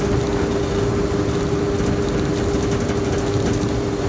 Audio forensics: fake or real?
real